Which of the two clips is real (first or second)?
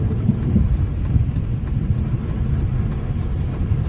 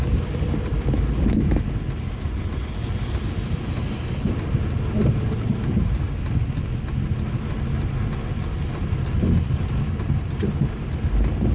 second